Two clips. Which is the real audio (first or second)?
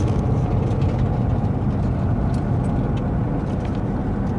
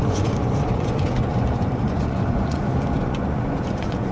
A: first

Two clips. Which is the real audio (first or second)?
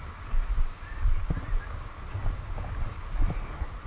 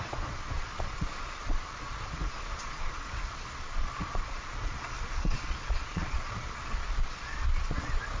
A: first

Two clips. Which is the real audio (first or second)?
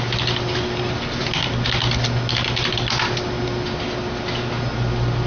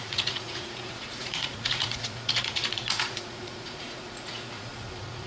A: first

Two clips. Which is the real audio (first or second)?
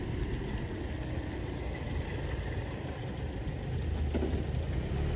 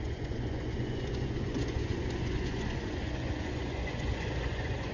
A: first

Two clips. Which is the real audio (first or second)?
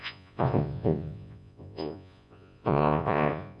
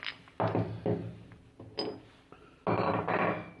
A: second